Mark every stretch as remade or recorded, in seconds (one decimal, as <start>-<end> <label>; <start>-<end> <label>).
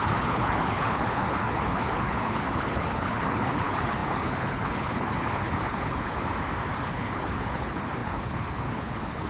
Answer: 0.0-6.3 remade; 6.3-6.9 recorded; 6.9-9.3 remade